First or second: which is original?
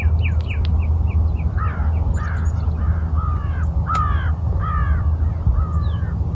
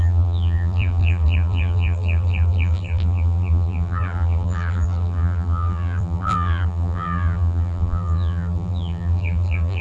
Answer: first